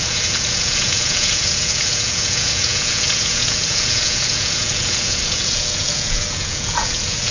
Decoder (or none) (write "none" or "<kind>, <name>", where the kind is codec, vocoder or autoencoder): vocoder, Vocos